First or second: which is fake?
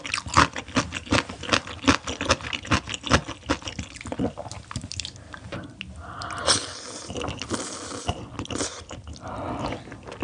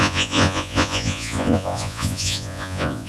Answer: second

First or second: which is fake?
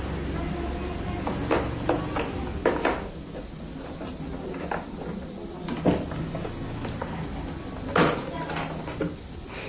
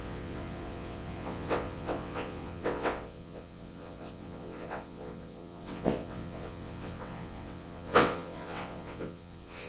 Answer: second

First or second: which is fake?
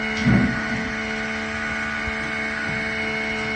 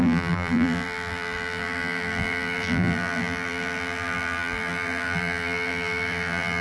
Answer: second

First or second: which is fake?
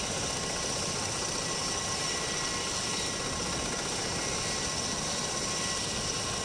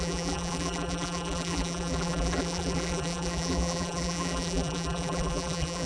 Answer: second